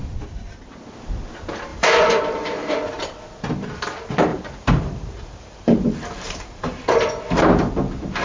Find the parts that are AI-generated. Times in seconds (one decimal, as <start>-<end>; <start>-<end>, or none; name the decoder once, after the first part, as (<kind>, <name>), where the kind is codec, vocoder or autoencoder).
1.7-2.7 (vocoder, BigVGAN v2); 4.3-6.8